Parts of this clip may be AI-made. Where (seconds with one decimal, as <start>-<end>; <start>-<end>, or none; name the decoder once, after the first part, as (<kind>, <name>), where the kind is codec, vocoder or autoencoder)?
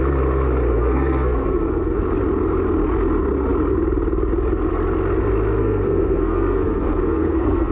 0.7-2.0 (codec, SNAC); 5.6-7.7